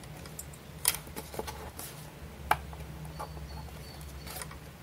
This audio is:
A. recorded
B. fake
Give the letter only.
A